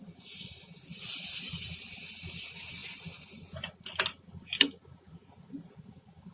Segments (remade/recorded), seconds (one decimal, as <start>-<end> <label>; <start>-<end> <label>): 0.0-2.8 remade; 2.8-5.1 recorded; 5.1-6.3 remade